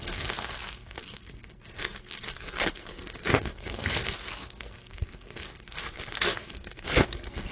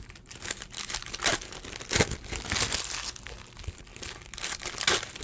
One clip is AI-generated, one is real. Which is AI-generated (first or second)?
first